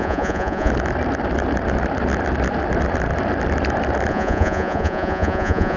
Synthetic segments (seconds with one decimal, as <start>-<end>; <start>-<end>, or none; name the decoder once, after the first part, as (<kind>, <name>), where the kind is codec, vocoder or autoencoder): 0.0-0.7 (vocoder, Vocos); 4.1-5.8